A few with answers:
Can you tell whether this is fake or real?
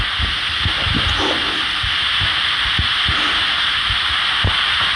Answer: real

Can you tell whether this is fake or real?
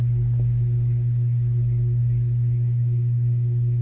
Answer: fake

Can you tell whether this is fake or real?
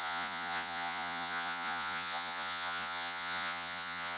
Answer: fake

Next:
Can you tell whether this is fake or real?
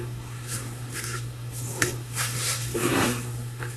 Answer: fake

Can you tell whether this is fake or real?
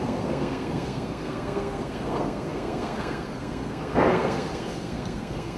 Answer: fake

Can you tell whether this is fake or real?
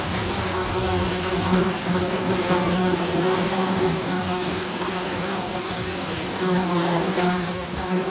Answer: fake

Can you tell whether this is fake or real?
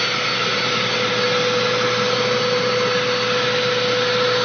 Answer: real